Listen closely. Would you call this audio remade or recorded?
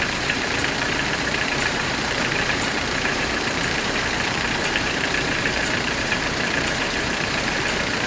remade